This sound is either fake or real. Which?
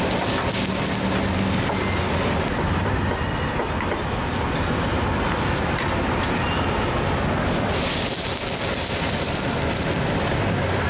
real